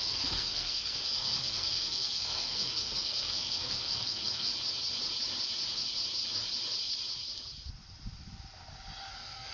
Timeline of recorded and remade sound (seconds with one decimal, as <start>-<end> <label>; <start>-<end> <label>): 0.0-4.5 remade; 4.5-9.1 recorded; 9.1-9.5 remade